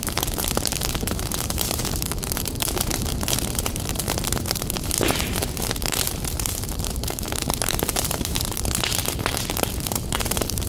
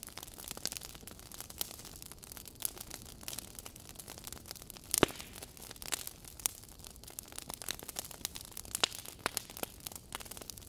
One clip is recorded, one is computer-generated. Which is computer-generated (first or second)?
first